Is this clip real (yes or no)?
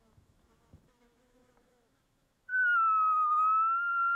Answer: no